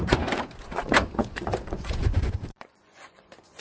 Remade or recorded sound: remade